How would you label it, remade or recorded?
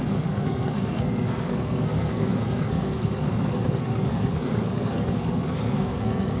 remade